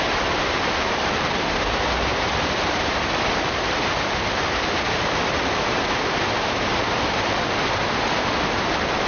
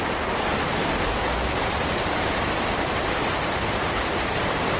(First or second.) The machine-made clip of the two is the first